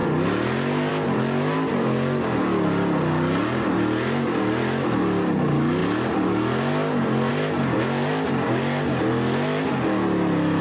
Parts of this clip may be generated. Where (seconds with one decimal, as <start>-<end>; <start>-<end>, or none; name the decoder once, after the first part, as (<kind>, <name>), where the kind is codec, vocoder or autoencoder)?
none